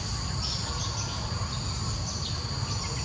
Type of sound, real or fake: real